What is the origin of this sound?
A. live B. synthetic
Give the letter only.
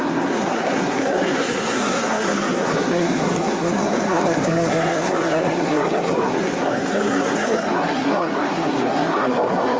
B